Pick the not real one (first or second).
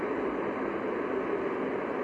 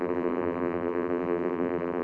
second